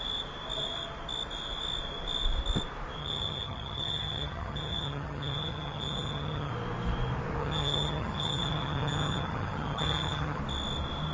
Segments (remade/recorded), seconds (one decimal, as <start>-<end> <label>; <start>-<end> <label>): 0.0-3.0 recorded; 3.0-6.5 remade; 6.5-7.4 recorded; 7.4-10.4 remade; 10.4-11.1 recorded